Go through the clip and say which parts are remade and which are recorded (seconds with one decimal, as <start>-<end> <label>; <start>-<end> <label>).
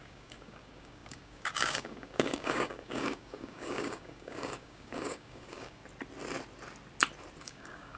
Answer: 0.0-5.8 remade; 5.8-7.4 recorded; 7.4-8.0 remade